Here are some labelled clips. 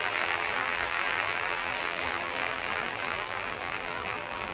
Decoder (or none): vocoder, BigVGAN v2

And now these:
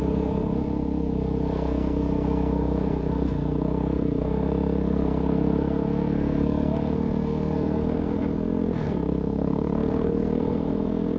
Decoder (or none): codec, SNAC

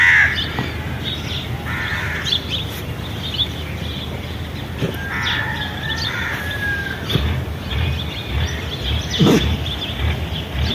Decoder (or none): none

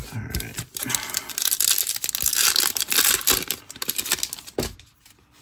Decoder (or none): none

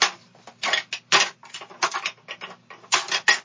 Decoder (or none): none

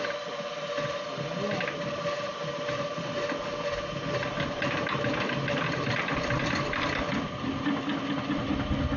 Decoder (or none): none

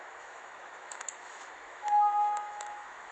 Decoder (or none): autoencoder, DAC-VAE